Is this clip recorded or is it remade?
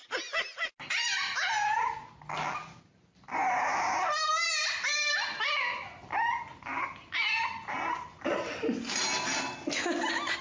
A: recorded